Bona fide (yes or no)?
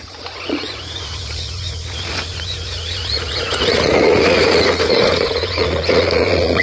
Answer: no